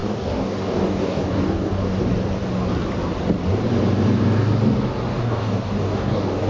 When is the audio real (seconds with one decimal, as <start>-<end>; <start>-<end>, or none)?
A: 2.1-5.1